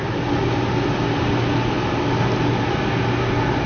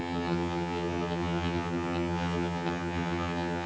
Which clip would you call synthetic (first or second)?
second